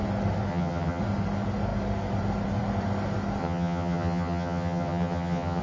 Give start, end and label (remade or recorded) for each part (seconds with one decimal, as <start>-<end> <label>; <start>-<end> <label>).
0.0-0.5 recorded; 0.5-1.0 remade; 1.0-3.4 recorded; 3.4-5.6 remade